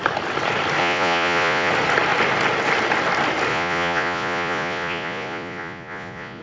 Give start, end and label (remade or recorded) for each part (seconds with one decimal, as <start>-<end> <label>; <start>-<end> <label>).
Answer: 0.0-0.8 recorded; 0.8-1.7 remade; 1.7-3.5 recorded; 3.5-6.4 remade